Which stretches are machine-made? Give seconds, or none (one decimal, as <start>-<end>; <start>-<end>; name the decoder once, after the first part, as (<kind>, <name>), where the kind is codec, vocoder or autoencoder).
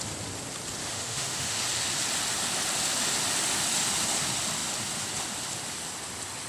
0.8-1.6 (autoencoder, DAC-VAE)